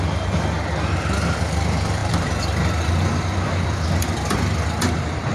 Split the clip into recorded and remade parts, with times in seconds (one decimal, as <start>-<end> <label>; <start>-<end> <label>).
0.0-5.3 remade